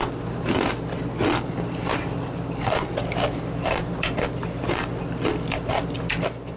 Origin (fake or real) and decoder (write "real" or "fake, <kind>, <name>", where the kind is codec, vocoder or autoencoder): fake, vocoder, BigVGAN v2